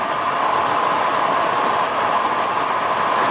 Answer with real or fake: real